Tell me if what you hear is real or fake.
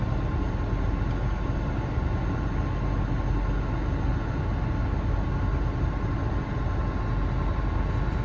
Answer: real